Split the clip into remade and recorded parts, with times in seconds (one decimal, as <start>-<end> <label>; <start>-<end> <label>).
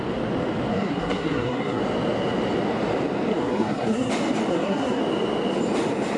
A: 0.0-0.7 recorded; 0.7-1.8 remade; 1.8-3.3 recorded; 3.3-4.1 remade; 4.1-4.5 recorded; 4.5-5.0 remade; 5.0-6.2 recorded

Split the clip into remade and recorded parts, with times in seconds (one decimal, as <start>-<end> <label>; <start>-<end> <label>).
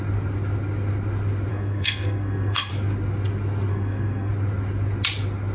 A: 0.0-1.5 recorded; 1.5-2.7 remade; 2.7-3.7 recorded; 3.7-4.3 remade; 4.3-5.5 recorded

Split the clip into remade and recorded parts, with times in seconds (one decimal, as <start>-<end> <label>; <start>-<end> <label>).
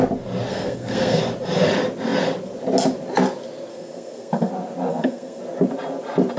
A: 0.0-0.5 recorded; 0.5-1.2 remade; 1.2-3.7 recorded; 3.7-4.5 remade; 4.5-4.9 recorded; 4.9-5.4 remade; 5.4-6.4 recorded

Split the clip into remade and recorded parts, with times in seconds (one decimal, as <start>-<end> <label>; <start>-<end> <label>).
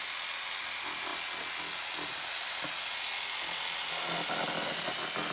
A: 0.0-5.3 recorded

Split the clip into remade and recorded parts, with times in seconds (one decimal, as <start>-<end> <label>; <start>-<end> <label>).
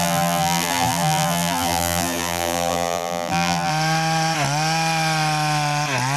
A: 0.0-3.7 remade; 3.7-6.2 recorded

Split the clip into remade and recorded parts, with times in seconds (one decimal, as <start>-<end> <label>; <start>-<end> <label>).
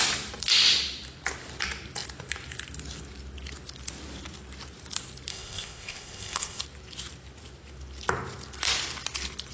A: 0.0-5.3 recorded; 5.3-6.6 remade; 6.6-9.5 recorded